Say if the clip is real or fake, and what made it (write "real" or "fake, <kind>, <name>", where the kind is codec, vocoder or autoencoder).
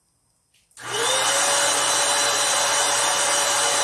real